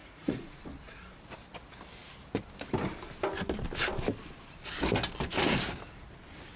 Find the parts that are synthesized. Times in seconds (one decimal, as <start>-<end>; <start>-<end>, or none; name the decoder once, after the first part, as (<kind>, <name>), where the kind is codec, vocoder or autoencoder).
0.0-0.6 (vocoder, Vocos)